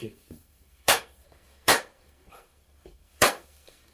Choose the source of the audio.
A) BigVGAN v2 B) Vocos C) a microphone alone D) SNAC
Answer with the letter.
D